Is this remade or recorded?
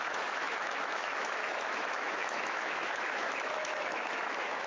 remade